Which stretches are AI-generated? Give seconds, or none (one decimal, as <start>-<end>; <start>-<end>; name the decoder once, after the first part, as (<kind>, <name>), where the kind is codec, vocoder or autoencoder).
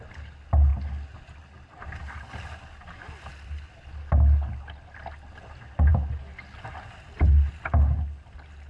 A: none